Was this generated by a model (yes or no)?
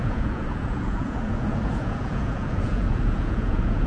yes